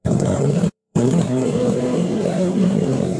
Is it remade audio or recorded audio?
remade